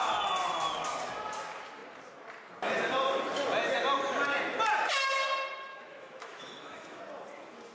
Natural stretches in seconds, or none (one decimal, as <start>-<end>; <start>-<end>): 0.0-5.7; 7.0-7.7